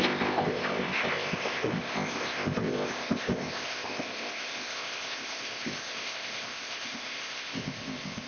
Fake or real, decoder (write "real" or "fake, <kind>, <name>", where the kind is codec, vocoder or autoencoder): fake, codec, ZipCodec